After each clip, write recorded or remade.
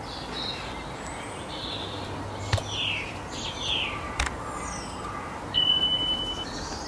recorded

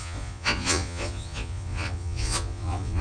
remade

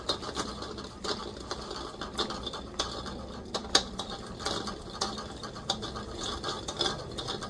recorded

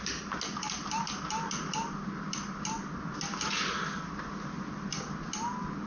recorded